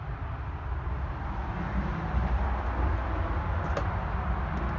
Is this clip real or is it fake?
real